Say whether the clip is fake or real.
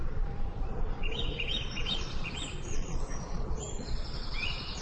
fake